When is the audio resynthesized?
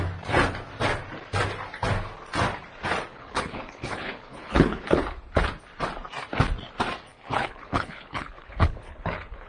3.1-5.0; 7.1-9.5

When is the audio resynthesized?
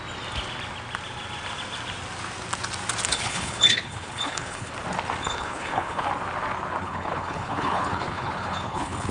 3.1-4.7; 5.2-6.1; 6.8-9.1